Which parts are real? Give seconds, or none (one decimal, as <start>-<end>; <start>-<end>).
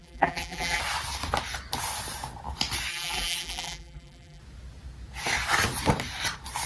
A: 0.8-2.9; 4.4-6.7